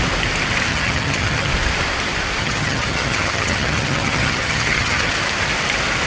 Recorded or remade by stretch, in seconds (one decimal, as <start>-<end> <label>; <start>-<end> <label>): 0.0-0.7 recorded; 0.7-1.5 remade; 1.5-2.4 recorded; 2.4-5.1 remade; 5.1-6.1 recorded